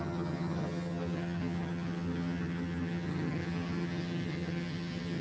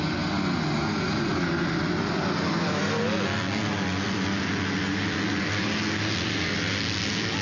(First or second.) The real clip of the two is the second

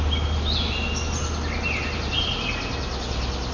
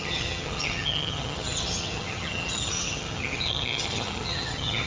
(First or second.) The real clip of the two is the first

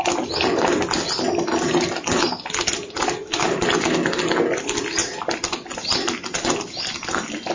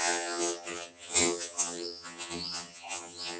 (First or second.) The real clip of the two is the first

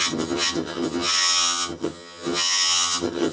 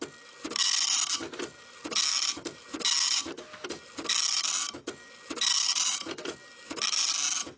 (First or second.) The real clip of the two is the second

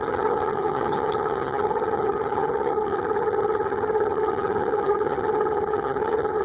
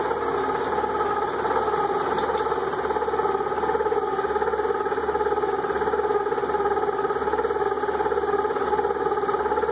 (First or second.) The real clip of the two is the second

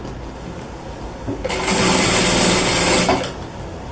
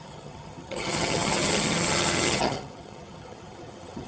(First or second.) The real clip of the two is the first